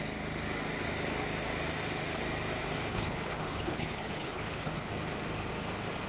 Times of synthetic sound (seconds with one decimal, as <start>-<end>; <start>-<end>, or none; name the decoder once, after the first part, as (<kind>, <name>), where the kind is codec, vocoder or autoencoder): 2.9-4.9 (codec, HILCodec)